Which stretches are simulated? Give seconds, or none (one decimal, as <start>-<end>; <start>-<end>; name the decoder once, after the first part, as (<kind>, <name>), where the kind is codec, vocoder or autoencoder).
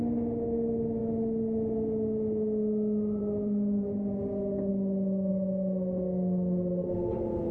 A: none